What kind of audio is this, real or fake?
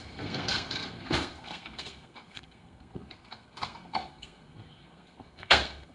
fake